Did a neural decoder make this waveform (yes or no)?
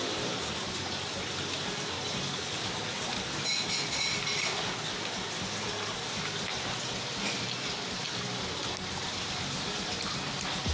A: no